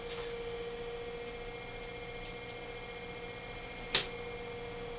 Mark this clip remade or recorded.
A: recorded